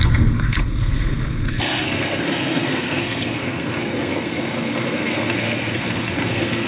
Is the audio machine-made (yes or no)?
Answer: yes